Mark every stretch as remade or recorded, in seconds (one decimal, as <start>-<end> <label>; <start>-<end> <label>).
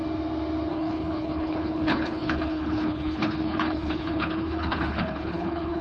0.0-0.7 recorded; 0.7-5.8 remade